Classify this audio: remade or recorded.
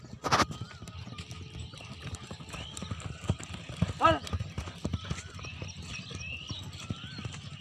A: recorded